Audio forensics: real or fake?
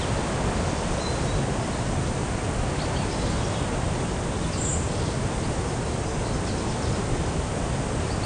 real